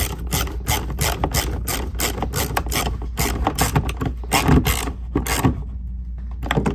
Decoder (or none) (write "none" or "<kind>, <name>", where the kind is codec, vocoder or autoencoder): none